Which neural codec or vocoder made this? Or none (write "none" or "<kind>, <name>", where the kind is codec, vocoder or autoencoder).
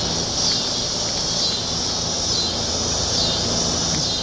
none